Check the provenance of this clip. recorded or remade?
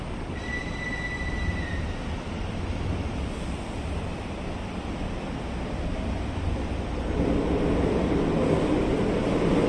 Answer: recorded